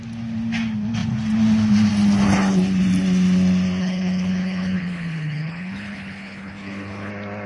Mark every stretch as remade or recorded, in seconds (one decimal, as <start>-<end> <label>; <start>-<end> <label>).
0.0-3.8 recorded; 3.8-7.1 remade; 7.1-7.5 recorded